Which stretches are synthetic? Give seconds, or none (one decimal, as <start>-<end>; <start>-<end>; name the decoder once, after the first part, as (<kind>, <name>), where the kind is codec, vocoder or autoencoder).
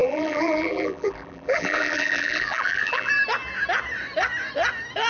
0.0-3.1 (vocoder, BigVGAN v2)